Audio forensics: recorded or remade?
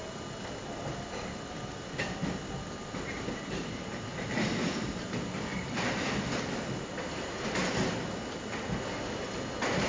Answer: recorded